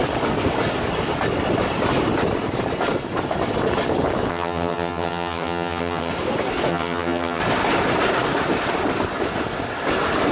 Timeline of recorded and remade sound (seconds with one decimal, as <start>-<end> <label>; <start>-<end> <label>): 0.0-4.3 recorded; 4.3-6.1 remade; 6.1-6.7 recorded; 6.7-7.4 remade; 7.4-10.3 recorded